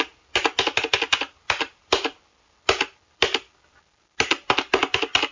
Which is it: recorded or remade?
recorded